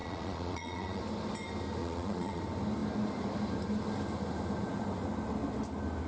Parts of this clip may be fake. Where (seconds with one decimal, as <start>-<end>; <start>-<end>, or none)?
0.0-1.0; 1.8-2.4